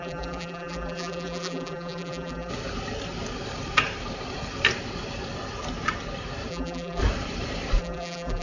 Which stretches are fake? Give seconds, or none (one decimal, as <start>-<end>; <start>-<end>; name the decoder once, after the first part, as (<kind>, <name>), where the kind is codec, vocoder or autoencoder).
0.0-2.5 (vocoder, BigVGAN v2); 6.5-7.0; 7.8-8.4